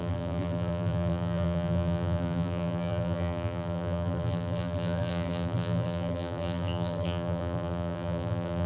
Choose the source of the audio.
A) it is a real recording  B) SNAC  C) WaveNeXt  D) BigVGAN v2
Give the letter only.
D